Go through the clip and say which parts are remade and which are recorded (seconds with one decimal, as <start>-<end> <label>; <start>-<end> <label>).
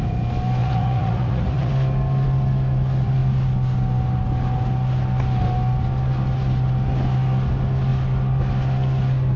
0.0-0.6 recorded; 0.6-1.7 remade; 1.7-9.4 recorded